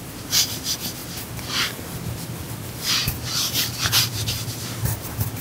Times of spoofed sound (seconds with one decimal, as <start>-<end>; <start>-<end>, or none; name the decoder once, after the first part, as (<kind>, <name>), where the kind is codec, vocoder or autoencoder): 3.0-3.9 (vocoder, BigVGAN v2)